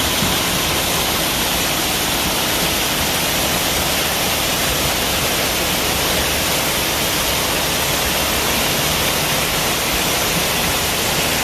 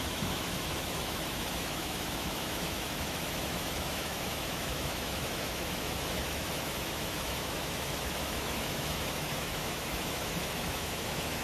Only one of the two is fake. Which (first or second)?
second